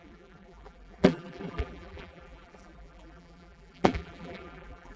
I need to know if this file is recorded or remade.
remade